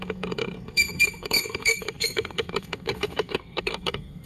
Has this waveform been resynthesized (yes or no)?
yes